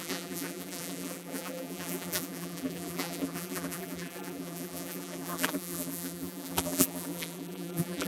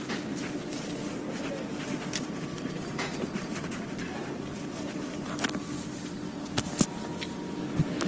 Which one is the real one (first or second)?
second